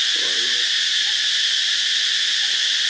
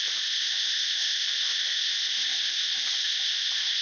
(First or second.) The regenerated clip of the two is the second